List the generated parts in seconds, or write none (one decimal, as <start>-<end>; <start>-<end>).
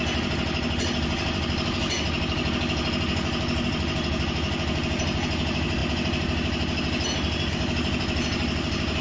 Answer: none